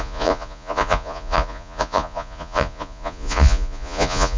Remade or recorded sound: remade